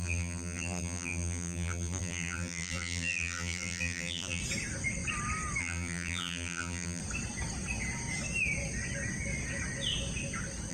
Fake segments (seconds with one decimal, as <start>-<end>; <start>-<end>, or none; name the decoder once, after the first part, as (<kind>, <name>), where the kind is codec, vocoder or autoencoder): 0.0-4.4 (vocoder, BigVGAN v2); 5.6-7.0